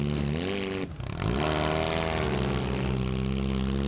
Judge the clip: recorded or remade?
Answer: recorded